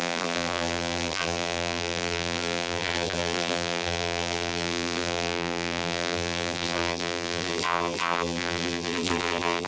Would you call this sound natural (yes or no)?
no